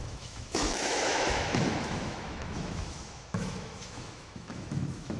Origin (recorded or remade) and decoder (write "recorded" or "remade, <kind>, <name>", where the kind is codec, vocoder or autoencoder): remade, autoencoder, DAC-VAE